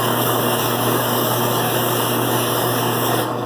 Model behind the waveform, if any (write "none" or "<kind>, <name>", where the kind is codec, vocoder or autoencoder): codec, DAC